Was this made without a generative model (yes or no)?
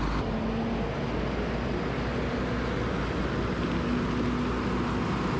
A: yes